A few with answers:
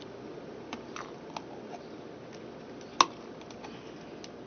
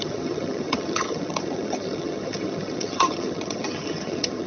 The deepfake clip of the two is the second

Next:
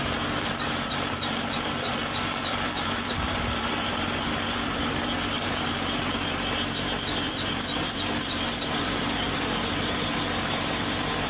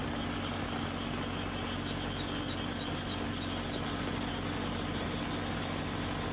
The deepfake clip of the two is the first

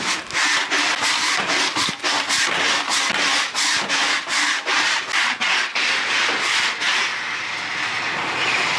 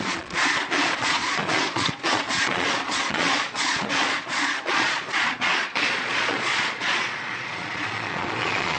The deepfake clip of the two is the second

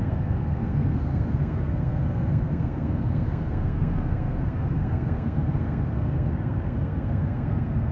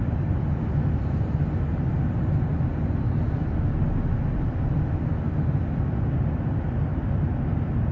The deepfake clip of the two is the first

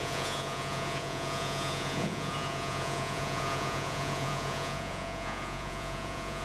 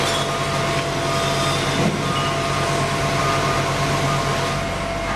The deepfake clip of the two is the first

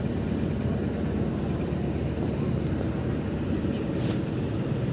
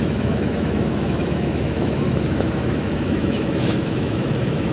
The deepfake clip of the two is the second